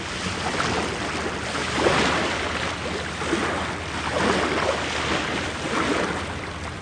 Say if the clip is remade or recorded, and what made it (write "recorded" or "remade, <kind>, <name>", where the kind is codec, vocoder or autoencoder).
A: recorded